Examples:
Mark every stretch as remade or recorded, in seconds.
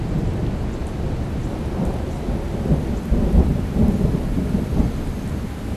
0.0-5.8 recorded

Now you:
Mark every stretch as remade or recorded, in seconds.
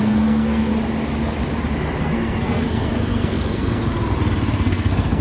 0.0-0.7 remade; 0.7-2.0 recorded; 2.0-3.8 remade; 3.8-4.5 recorded; 4.5-5.2 remade